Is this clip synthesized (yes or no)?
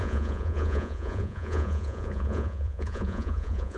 yes